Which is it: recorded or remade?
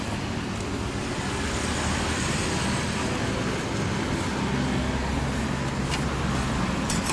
recorded